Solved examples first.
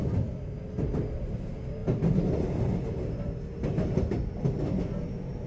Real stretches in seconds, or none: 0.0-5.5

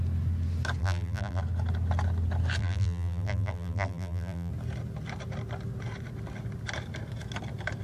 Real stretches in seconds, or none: 0.0-0.8; 1.4-2.6; 4.5-7.8

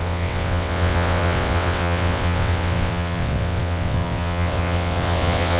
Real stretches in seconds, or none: none

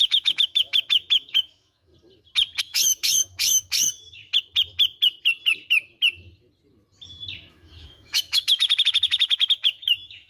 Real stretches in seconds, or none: 1.9-2.6; 4.2-7.5

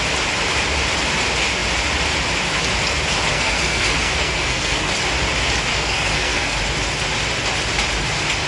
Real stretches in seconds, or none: 0.0-3.3; 4.9-5.7; 6.6-8.5